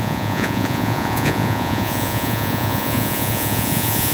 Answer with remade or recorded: remade